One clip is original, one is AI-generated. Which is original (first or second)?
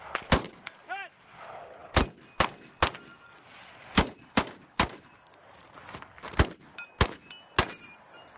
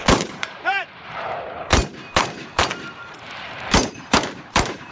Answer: first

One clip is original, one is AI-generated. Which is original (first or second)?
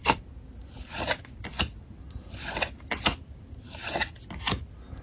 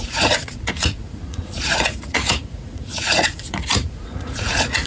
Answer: first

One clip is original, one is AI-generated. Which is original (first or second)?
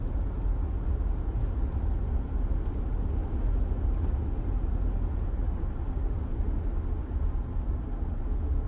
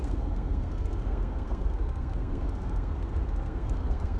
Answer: first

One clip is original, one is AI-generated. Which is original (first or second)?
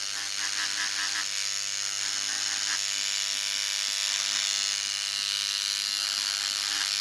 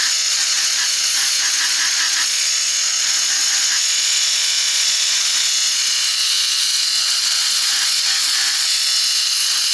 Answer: first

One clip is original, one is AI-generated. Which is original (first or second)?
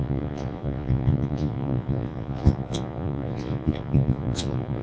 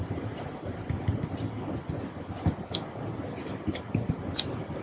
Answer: second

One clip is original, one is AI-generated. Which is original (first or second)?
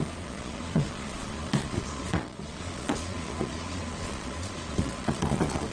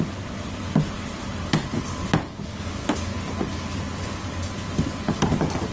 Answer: second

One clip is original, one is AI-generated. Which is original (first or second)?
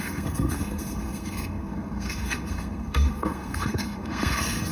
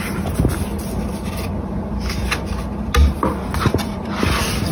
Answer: second